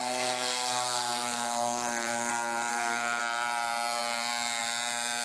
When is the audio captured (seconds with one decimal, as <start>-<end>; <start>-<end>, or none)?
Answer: 2.3-2.7; 3.2-5.2